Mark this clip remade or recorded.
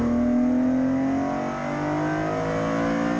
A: recorded